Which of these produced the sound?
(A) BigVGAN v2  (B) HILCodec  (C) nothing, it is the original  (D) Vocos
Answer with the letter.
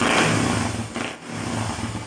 C